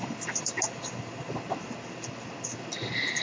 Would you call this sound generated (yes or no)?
no